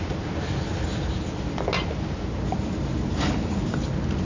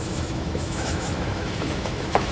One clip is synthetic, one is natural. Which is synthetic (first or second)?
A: second